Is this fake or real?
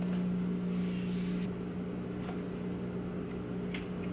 real